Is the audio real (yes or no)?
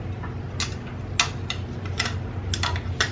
yes